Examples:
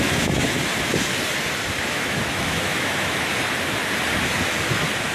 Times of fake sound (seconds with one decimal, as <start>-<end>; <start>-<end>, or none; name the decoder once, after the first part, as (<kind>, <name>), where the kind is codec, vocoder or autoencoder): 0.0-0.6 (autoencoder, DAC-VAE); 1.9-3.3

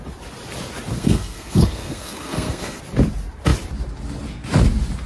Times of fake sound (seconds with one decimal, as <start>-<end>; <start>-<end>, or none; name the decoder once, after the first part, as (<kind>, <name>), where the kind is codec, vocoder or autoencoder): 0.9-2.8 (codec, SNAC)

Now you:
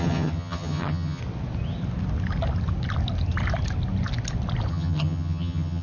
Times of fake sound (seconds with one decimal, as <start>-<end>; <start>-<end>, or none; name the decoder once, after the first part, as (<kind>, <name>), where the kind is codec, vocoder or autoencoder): 0.0-1.2 (vocoder, HiFi-GAN); 4.7-5.8